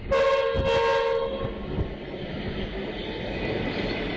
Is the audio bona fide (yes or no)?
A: yes